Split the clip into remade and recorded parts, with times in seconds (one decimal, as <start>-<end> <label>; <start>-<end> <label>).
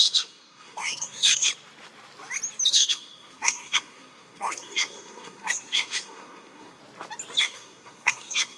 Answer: 0.0-1.5 remade; 1.5-2.7 recorded; 2.7-6.8 remade; 6.8-7.4 recorded; 7.4-8.6 remade